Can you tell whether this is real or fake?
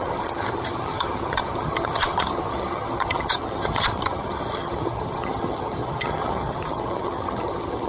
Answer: fake